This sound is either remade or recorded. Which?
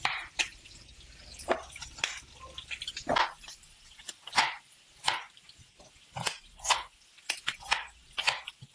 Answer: recorded